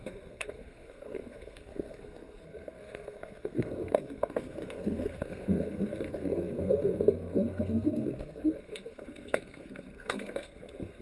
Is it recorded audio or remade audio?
remade